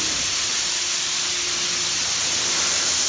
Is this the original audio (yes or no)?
yes